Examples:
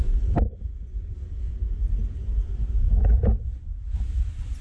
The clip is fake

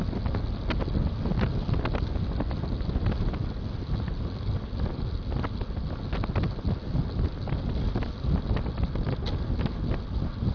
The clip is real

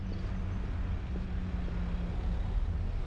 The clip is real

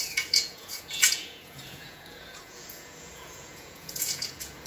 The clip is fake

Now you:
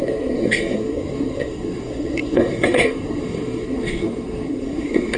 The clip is fake